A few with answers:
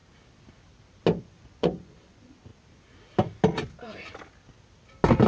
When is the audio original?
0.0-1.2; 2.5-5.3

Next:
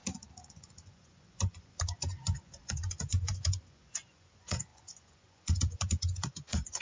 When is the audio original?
0.0-0.5

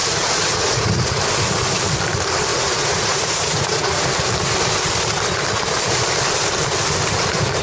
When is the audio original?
1.2-2.5; 4.1-7.6

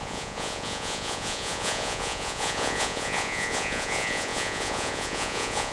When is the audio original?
none

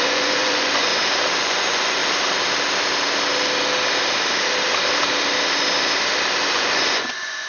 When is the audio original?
0.9-1.4; 2.0-6.5

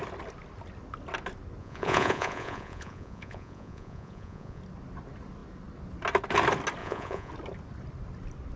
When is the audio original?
0.0-1.6; 4.6-6.8; 7.3-8.6